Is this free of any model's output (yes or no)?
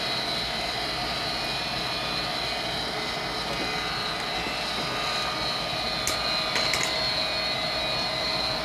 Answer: yes